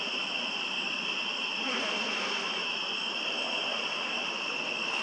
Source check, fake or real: real